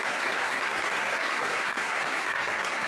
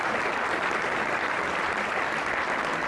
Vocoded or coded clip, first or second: first